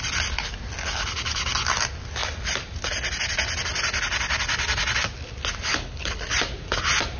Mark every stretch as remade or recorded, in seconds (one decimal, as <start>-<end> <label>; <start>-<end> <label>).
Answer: 0.0-5.7 recorded; 5.7-6.2 remade; 6.2-7.2 recorded